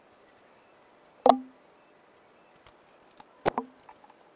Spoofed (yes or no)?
no